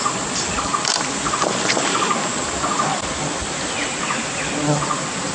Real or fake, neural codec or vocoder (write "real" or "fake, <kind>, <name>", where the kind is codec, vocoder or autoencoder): real